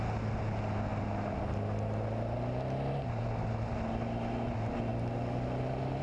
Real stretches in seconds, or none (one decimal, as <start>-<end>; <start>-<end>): 0.0-6.0

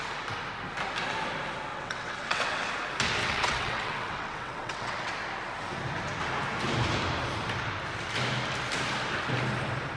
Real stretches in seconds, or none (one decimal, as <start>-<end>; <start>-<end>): 0.0-1.7; 2.7-3.2; 5.1-10.0

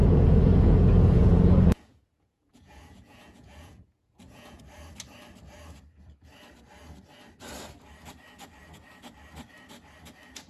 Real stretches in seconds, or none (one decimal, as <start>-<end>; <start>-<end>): 4.6-10.5

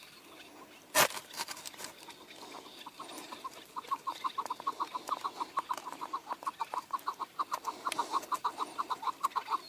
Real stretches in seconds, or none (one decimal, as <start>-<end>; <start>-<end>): 0.0-9.7

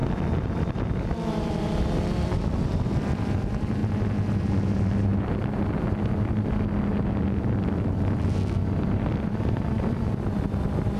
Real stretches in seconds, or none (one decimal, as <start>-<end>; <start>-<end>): 0.0-0.7; 3.8-4.3; 5.1-7.7

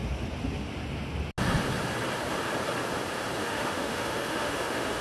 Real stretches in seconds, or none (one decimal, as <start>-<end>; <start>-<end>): 0.0-3.4

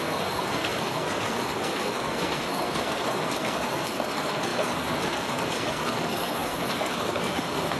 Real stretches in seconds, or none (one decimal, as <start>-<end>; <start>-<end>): none